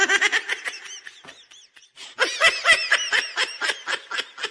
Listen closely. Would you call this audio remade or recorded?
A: recorded